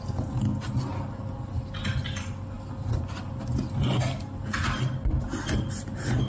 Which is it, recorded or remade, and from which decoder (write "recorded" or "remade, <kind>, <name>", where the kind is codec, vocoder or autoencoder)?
recorded